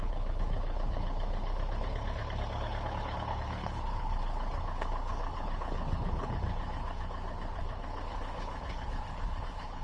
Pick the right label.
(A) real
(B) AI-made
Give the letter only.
B